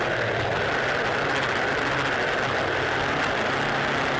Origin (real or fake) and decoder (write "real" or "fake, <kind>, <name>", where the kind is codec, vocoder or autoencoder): real